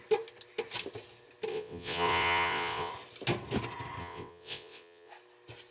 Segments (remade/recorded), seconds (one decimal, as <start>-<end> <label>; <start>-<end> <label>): 0.0-1.5 recorded; 1.5-2.9 remade; 2.9-4.0 recorded; 4.0-5.1 remade; 5.1-5.7 recorded